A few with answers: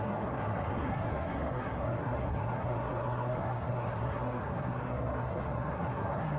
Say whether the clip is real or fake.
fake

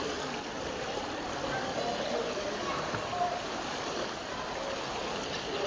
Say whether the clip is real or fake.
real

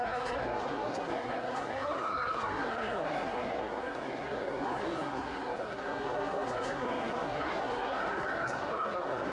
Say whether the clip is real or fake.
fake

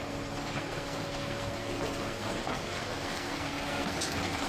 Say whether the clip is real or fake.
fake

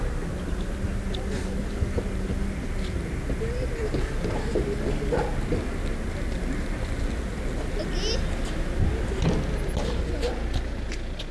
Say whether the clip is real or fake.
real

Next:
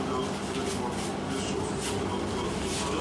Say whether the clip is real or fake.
real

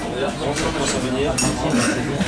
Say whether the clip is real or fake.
real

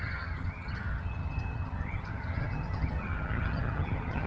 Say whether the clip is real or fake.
fake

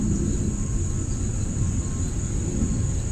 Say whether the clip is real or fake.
real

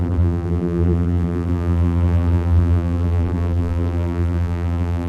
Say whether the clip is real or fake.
fake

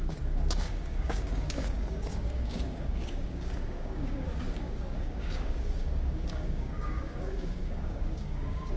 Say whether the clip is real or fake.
fake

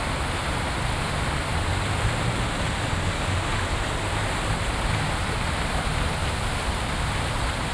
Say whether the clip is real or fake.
real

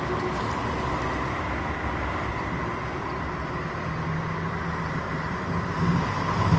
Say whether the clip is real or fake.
real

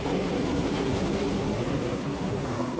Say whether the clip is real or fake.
fake